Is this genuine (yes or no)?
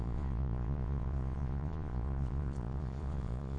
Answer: no